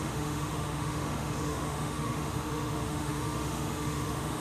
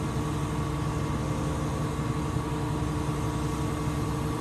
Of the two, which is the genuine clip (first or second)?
second